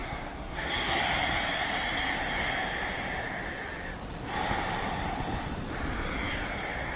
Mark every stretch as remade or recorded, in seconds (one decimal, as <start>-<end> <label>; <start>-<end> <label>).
0.0-1.0 remade; 1.0-7.0 recorded